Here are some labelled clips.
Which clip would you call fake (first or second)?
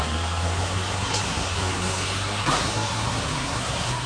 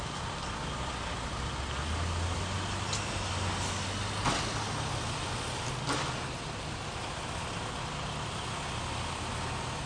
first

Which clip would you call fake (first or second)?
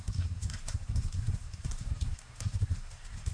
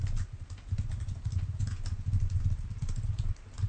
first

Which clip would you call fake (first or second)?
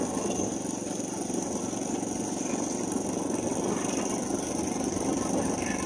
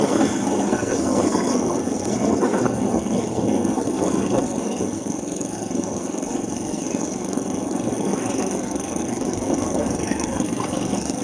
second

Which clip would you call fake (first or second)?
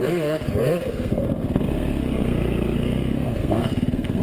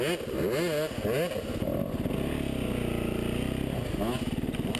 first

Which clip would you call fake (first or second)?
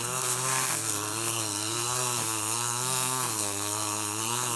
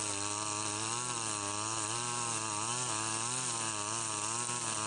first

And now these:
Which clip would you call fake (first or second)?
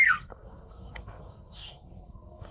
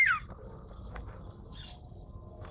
first